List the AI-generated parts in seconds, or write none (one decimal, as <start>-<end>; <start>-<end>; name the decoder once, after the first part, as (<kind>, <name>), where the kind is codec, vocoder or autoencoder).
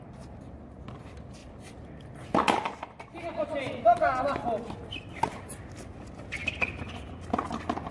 none